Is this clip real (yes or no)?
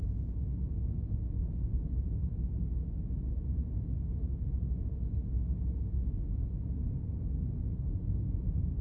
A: yes